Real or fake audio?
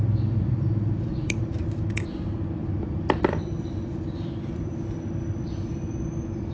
fake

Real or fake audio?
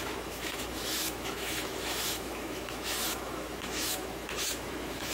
fake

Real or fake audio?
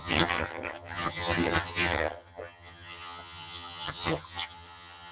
fake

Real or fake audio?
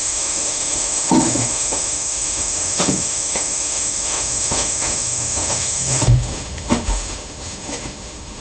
fake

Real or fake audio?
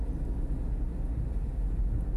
real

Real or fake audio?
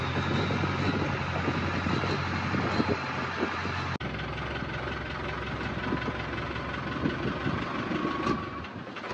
real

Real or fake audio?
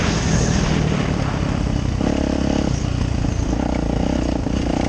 real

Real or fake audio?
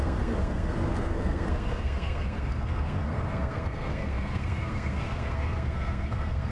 fake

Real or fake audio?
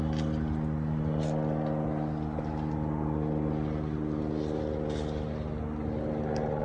real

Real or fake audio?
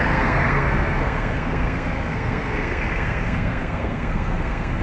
fake